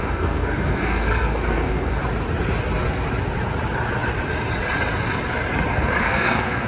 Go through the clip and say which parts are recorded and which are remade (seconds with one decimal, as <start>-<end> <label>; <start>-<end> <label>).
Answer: 0.0-2.0 remade; 2.0-6.0 recorded; 6.0-6.7 remade